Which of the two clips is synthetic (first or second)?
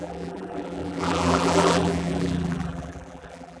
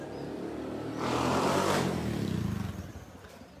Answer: first